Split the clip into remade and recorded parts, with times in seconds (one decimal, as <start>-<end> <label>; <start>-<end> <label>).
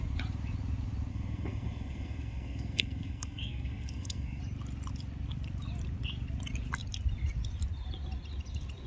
0.0-1.1 recorded; 1.1-4.4 remade; 4.4-8.9 recorded